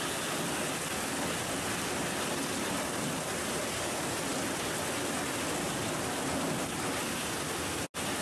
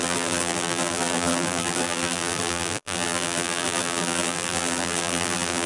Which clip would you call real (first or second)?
first